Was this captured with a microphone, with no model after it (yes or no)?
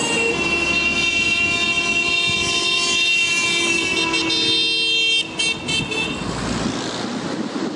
yes